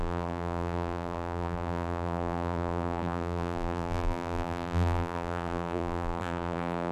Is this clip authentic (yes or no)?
no